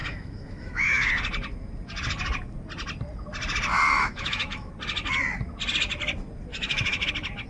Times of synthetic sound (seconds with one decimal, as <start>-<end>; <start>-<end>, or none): 0.0-1.1; 3.7-4.7; 6.5-7.1